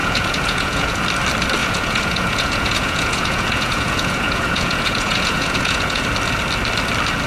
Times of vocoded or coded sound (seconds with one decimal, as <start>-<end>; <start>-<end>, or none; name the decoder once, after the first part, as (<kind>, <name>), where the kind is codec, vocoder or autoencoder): 0.0-1.0 (vocoder, Vocos); 1.6-6.0